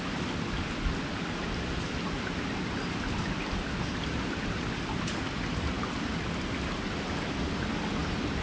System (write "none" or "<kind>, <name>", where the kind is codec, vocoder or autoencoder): none